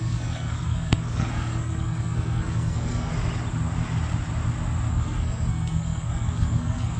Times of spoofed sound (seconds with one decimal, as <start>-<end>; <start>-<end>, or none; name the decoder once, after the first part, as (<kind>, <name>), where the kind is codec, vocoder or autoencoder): 0.0-3.1 (codec, SNAC); 4.9-7.0